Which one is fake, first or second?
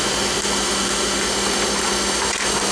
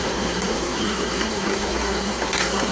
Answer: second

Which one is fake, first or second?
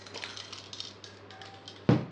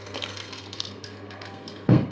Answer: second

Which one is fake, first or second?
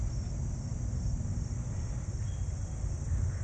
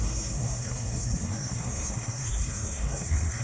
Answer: second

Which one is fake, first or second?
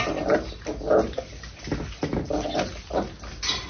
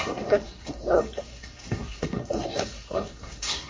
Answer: second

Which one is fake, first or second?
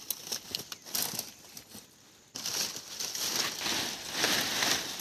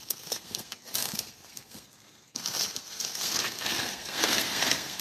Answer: second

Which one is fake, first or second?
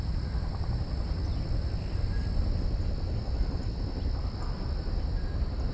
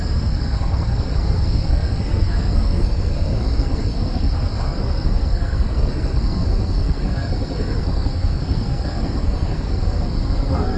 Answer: second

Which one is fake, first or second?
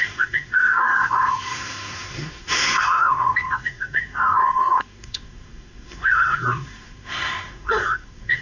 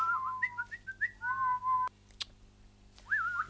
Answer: first